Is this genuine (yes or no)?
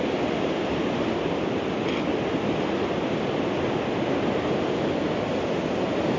yes